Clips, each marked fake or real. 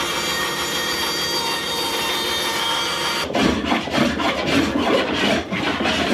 real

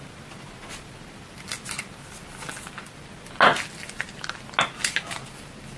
real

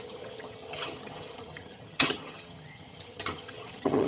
fake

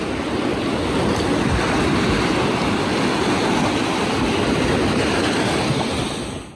real